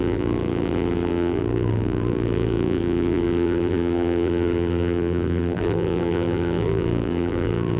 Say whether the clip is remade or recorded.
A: remade